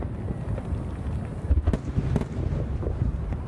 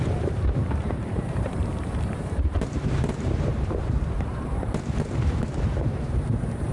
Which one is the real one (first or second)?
first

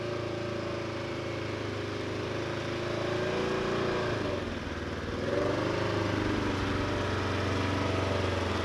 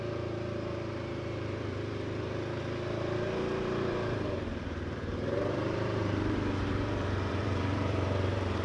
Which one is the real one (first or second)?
first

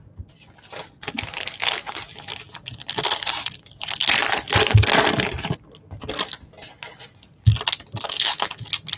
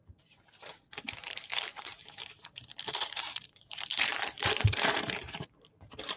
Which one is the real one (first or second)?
first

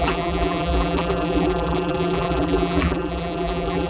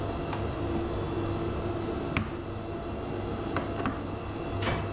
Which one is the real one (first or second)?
second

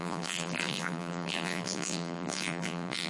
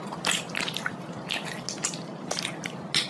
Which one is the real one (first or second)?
second